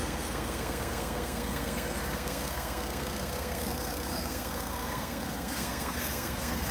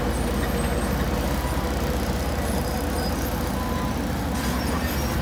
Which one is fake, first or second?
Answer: first